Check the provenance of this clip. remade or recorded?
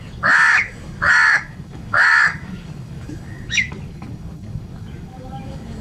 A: remade